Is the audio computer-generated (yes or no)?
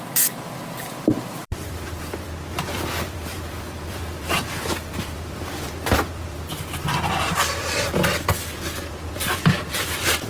yes